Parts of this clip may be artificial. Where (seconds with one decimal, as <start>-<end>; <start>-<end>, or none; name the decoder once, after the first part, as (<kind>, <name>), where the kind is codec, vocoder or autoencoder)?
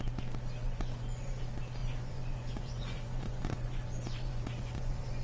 0.6-1.4 (vocoder, Vocos); 1.8-5.2